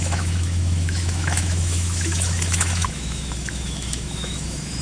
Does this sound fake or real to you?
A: fake